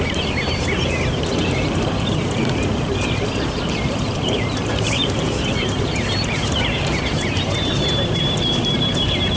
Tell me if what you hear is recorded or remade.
remade